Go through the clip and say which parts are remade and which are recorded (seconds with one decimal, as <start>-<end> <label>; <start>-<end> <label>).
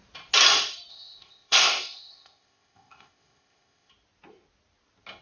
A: 0.0-0.9 recorded; 0.9-3.9 remade; 3.9-5.2 recorded